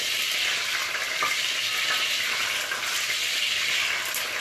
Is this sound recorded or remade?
recorded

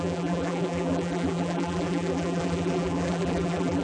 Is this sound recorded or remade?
remade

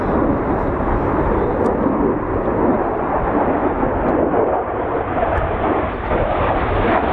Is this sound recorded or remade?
recorded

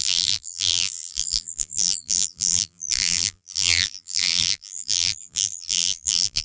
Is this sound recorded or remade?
remade